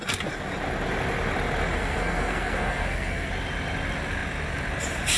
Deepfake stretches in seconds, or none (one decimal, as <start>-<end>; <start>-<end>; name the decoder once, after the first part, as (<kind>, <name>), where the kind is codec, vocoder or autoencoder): 1.7-3.3 (codec, SNAC)